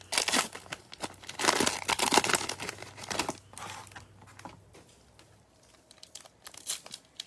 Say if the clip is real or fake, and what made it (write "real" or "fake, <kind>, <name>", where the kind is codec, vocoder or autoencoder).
real